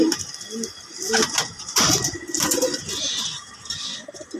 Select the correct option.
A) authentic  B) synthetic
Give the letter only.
A